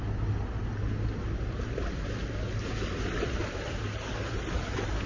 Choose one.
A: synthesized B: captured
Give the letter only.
B